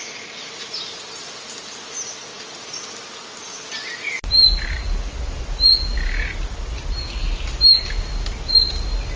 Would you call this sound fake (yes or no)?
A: no